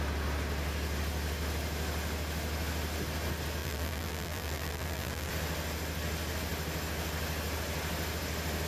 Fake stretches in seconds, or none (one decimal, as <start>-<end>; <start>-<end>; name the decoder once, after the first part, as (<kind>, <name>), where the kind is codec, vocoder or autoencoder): 3.6-5.3 (vocoder, BigVGAN v2)